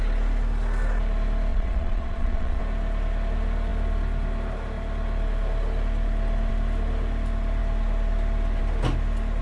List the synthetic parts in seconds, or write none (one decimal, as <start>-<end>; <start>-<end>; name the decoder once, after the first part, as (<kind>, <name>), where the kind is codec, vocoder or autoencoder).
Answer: 1.5-2.6 (vocoder, Vocos)